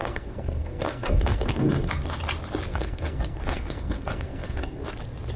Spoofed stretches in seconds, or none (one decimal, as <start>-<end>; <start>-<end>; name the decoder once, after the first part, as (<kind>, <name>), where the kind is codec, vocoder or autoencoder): 0.0-1.9 (codec, SNAC); 2.7-4.9